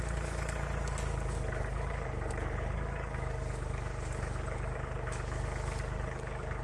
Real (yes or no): no